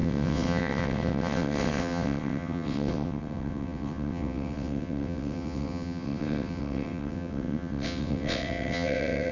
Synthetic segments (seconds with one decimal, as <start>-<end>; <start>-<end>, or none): 0.0-9.3